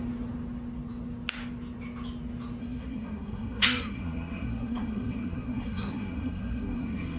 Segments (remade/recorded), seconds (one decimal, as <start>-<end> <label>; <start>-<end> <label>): 0.0-2.6 recorded; 2.6-7.2 remade